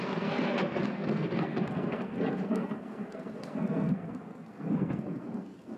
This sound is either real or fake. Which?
fake